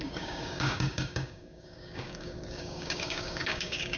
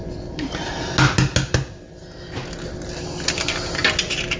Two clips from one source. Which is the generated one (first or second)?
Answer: first